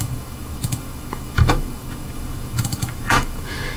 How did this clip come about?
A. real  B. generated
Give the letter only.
B